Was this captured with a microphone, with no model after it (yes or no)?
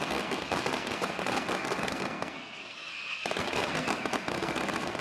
no